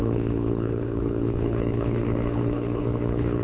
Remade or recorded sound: remade